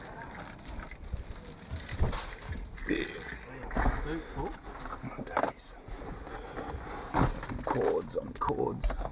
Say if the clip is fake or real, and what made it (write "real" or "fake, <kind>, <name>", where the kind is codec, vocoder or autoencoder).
real